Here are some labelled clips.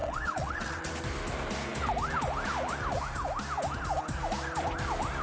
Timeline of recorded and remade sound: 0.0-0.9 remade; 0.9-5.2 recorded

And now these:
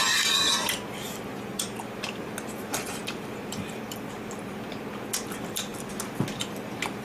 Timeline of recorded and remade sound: 0.0-7.0 remade

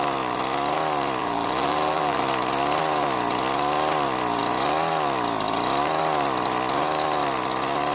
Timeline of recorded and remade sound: 0.0-1.2 recorded; 1.2-2.2 remade; 2.2-7.9 recorded

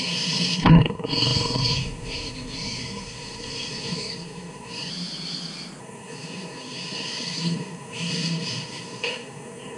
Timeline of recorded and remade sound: 0.0-4.9 remade; 4.9-5.8 recorded; 5.8-9.8 remade

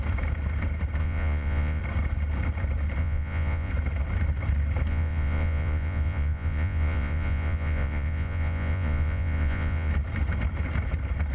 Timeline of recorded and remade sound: 0.0-1.0 recorded; 1.0-1.8 remade; 1.8-3.0 recorded; 3.0-3.7 remade; 3.7-4.9 recorded; 4.9-9.9 remade; 9.9-11.3 recorded

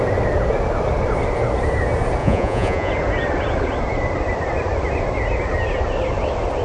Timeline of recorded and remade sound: 0.0-2.2 recorded; 2.2-2.9 remade; 2.9-6.6 recorded

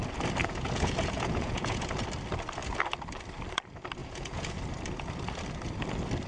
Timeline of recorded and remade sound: 0.0-0.4 recorded; 0.4-1.9 remade; 1.9-4.0 recorded; 4.0-4.5 remade; 4.5-6.3 recorded